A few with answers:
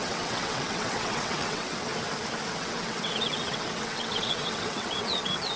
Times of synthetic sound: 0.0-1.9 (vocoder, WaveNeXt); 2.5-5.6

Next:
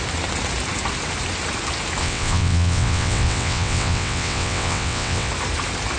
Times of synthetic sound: 2.0-5.3 (vocoder, WaveNeXt)

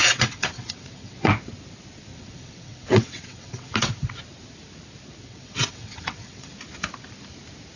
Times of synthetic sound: 0.0-1.3 (vocoder, WaveNeXt); 2.1-4.2; 5.2-6.5

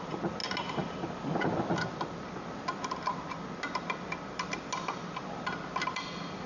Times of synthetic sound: none

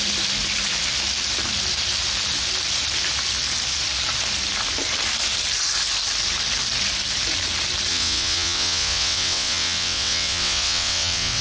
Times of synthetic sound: 7.9-11.4 (vocoder, WaveNeXt)